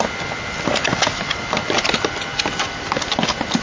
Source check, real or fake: real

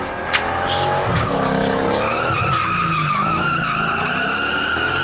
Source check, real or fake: real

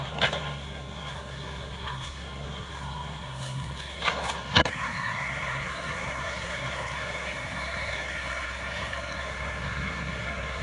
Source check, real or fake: fake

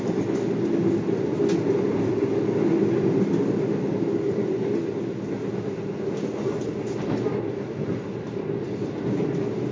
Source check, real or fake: real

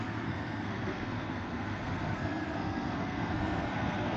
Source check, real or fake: fake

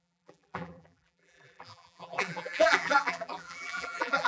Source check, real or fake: fake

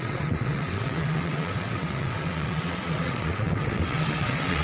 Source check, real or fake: fake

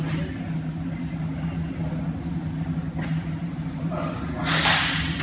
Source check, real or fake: real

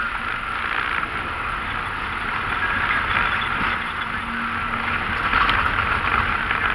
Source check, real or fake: real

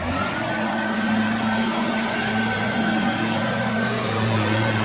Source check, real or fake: fake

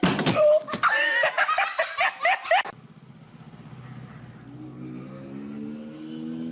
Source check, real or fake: real